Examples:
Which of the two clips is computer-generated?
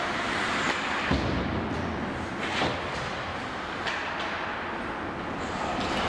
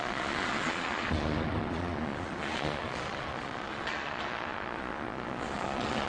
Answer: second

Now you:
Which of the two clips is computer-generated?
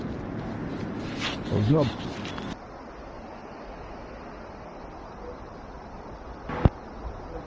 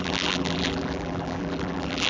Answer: second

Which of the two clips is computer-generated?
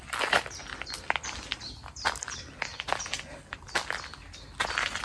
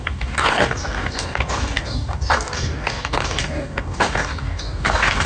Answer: second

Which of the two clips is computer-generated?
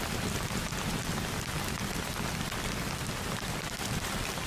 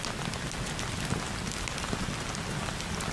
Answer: first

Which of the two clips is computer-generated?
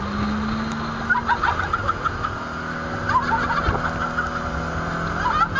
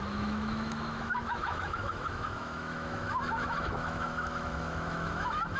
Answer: second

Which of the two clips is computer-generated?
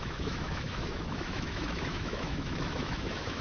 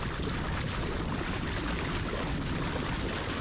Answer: first